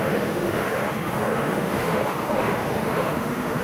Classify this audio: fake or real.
fake